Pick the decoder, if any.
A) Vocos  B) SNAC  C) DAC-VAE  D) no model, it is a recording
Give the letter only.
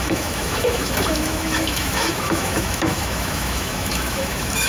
C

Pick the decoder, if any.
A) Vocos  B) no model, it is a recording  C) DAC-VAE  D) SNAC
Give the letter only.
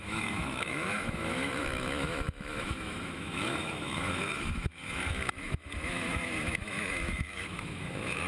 C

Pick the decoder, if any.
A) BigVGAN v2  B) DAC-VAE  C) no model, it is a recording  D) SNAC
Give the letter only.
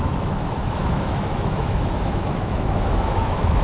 B